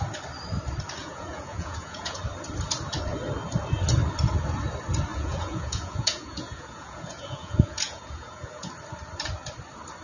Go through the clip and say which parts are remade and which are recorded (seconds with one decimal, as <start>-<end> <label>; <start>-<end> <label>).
0.0-1.0 recorded; 1.0-2.2 remade; 2.2-5.1 recorded; 5.1-8.7 remade; 8.7-10.0 recorded